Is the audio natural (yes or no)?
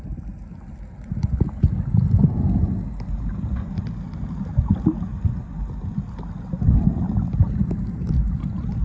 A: yes